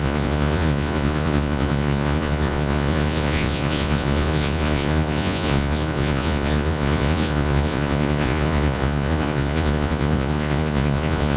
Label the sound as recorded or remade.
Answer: remade